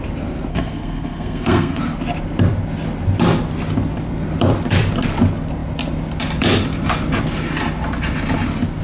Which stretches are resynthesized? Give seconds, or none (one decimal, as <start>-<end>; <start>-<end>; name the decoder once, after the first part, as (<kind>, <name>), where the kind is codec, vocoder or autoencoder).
0.5-1.8 (codec, SNAC)